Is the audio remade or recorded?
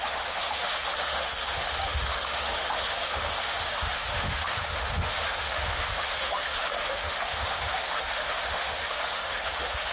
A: remade